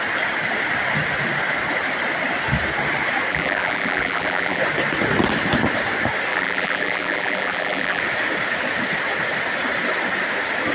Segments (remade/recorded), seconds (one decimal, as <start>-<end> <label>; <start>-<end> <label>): 0.0-3.3 recorded; 3.3-4.6 remade; 4.6-6.3 recorded; 6.3-8.0 remade; 8.0-10.7 recorded

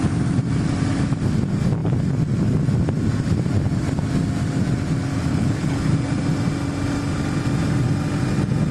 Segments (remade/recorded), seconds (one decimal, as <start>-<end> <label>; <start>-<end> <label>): 0.0-5.3 recorded; 5.3-5.9 remade; 5.9-8.7 recorded

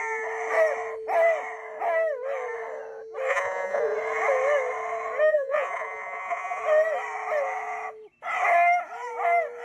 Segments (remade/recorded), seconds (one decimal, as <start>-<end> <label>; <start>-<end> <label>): 0.0-3.3 recorded; 3.3-3.8 remade; 3.8-5.3 recorded; 5.3-6.6 remade; 6.6-9.6 recorded